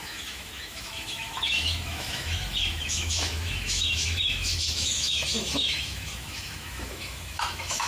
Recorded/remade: remade